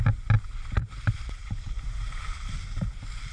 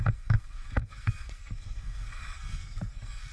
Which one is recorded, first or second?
first